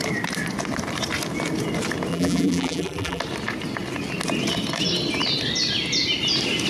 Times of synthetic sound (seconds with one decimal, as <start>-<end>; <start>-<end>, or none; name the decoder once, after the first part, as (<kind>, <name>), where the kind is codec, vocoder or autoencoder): 2.1-3.2 (vocoder, BigVGAN v2)